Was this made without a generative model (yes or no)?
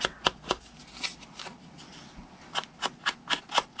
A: yes